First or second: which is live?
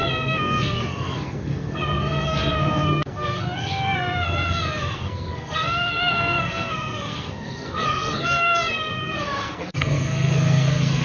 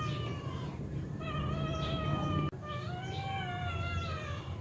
second